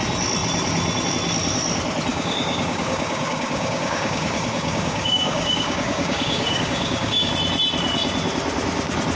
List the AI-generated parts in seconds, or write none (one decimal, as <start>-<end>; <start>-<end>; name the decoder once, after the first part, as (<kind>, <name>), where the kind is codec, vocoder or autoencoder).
2.1-7.3 (codec, DAC)